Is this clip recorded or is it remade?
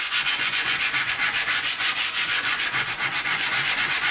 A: remade